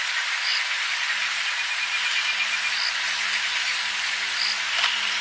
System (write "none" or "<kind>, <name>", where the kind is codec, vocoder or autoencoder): none